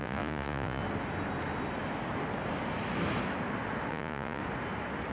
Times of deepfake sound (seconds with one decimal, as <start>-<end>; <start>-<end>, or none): 0.0-0.8; 3.9-4.4